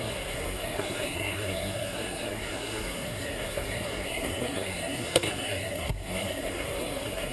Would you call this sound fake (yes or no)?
yes